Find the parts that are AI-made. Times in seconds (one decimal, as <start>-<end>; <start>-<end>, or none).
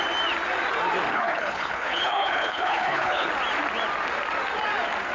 1.1-3.3